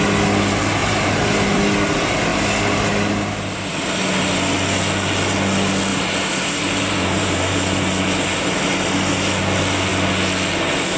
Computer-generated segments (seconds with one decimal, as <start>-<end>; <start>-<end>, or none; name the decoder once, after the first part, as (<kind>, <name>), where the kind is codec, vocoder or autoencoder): 0.8-1.6 (vocoder, BigVGAN v2); 5.9-7.8